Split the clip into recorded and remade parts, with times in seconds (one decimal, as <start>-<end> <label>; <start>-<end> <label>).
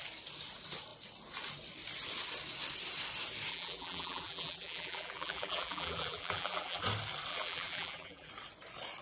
0.0-3.5 recorded; 3.5-6.8 remade; 6.8-7.3 recorded; 7.3-8.3 remade; 8.3-9.0 recorded